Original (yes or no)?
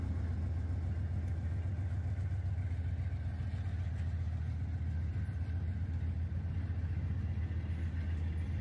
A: yes